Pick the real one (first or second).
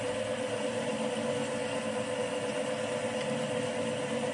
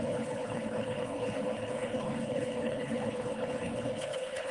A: first